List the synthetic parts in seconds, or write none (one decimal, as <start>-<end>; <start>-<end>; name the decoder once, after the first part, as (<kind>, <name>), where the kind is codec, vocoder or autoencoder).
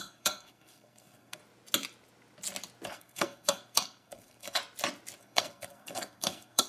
0.0-1.4 (codec, SNAC); 2.9-4.6; 5.2-6.7